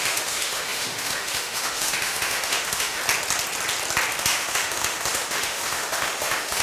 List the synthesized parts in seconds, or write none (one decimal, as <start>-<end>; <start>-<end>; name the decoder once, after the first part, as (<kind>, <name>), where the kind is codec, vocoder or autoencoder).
0.0-3.0 (autoencoder, DAC-VAE); 4.1-6.6